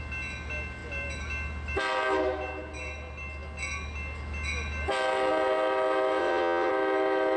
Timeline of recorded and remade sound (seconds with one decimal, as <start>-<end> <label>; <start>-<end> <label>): 0.0-6.2 recorded; 6.2-6.7 remade; 6.7-7.4 recorded